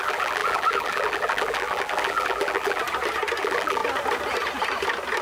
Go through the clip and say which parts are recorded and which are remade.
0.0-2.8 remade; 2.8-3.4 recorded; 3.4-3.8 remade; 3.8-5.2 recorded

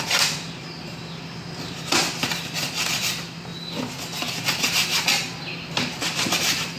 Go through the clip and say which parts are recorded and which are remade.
0.0-3.5 remade; 3.5-6.2 recorded; 6.2-6.8 remade

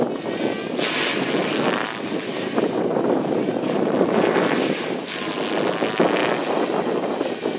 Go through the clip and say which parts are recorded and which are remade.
0.0-1.1 recorded; 1.1-5.3 remade; 5.3-7.6 recorded

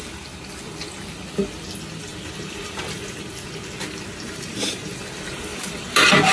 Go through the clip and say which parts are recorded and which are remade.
0.0-4.1 recorded; 4.1-5.0 remade; 5.0-5.5 recorded; 5.5-6.3 remade

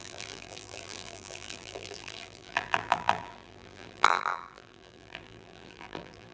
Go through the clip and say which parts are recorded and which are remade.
0.0-6.3 remade

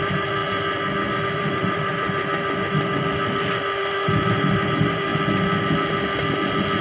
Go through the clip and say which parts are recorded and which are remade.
0.0-0.4 remade; 0.4-1.2 recorded; 1.2-1.9 remade; 1.9-3.8 recorded; 3.8-5.1 remade; 5.1-6.8 recorded

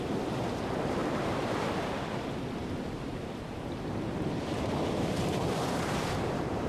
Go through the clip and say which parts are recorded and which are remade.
0.0-1.0 recorded; 1.0-1.9 remade; 1.9-2.6 recorded; 2.6-6.7 remade

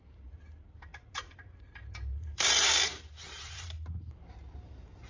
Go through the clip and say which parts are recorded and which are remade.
0.0-5.1 remade